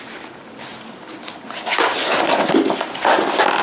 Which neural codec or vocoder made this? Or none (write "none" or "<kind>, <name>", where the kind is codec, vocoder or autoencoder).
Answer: none